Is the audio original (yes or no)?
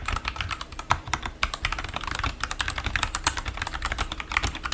yes